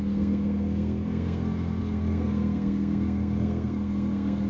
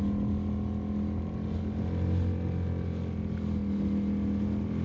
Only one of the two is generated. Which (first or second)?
first